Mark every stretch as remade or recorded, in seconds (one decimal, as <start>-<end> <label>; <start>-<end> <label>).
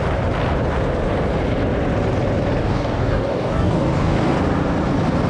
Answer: 0.0-2.6 recorded; 2.6-4.4 remade; 4.4-5.3 recorded